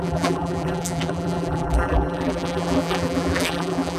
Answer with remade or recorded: remade